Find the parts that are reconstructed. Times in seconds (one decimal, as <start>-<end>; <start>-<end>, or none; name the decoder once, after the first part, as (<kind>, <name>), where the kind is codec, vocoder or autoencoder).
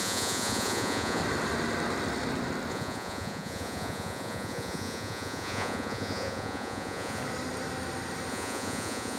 0.0-1.2 (vocoder, Vocos); 2.7-7.2; 8.3-9.2